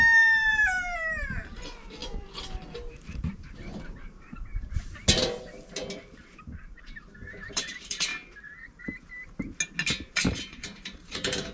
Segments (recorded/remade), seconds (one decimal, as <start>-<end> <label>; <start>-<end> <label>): 0.0-5.0 remade; 5.0-6.3 recorded; 6.3-8.1 remade; 8.1-10.1 recorded; 10.1-11.5 remade